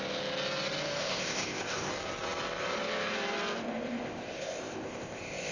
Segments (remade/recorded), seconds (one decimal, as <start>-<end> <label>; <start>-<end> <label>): 0.0-1.0 recorded; 1.0-1.9 remade; 1.9-3.6 recorded; 3.6-5.5 remade